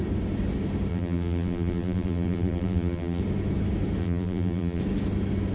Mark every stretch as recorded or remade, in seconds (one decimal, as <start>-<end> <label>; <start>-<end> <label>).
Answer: 0.0-0.9 recorded; 0.9-3.2 remade; 3.2-4.0 recorded; 4.0-4.8 remade; 4.8-5.5 recorded